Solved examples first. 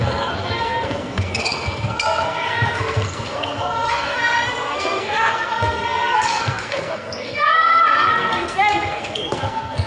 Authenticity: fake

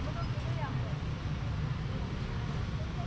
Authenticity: real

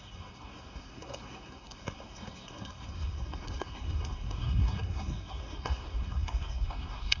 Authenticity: fake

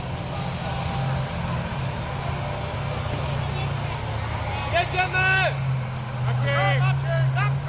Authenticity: real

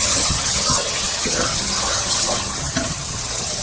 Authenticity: fake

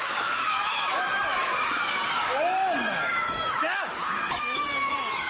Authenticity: fake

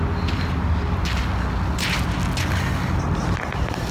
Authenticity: real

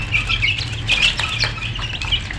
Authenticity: real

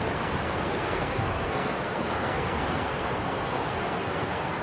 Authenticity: fake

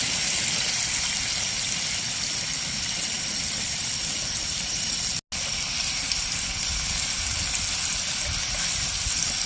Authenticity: real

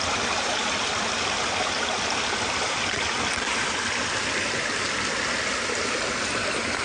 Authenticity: real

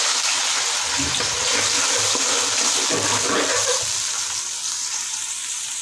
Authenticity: real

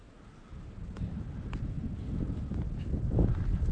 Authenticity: real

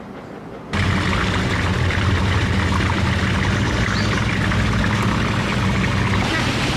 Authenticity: real